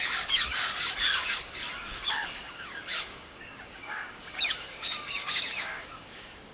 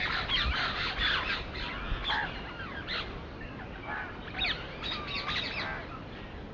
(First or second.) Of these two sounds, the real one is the second